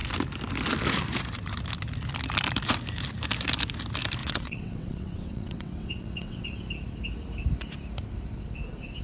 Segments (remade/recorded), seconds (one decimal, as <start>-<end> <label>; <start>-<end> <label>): 0.0-4.2 recorded; 4.2-6.6 remade; 6.6-9.0 recorded